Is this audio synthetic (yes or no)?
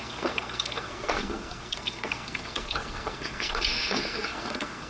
yes